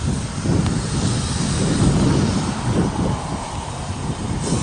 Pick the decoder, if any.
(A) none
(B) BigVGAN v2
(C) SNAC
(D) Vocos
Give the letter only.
A